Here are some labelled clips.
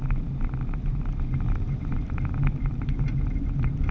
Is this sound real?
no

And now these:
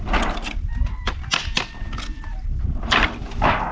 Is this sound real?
yes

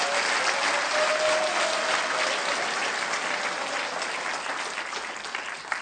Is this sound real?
yes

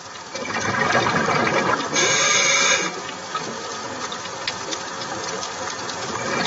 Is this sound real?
yes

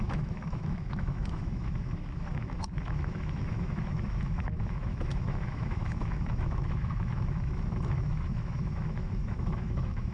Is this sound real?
no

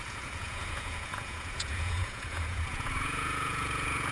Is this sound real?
no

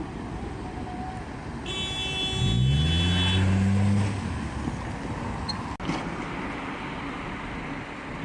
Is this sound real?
yes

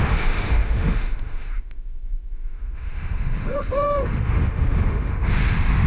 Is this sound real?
no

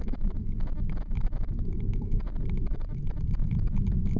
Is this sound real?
no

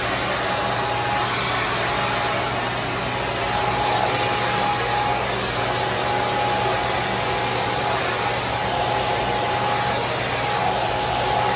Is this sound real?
yes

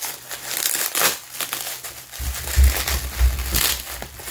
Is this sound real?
yes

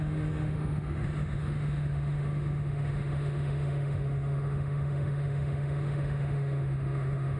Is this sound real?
no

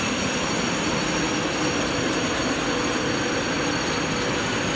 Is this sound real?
yes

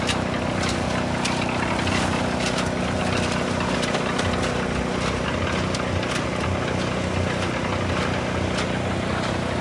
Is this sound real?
yes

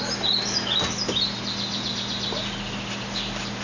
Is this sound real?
yes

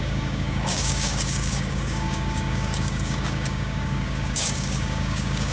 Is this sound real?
no